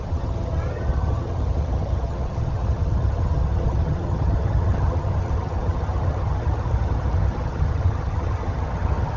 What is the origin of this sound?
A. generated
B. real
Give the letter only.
A